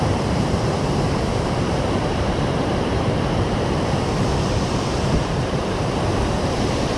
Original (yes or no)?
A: no